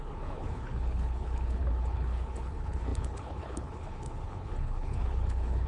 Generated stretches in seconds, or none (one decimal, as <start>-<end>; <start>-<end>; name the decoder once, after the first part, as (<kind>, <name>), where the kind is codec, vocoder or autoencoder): 0.0-5.7 (codec, HILCodec)